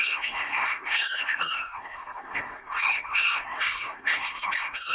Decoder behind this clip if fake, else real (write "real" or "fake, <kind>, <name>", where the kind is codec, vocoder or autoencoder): fake, codec, SNAC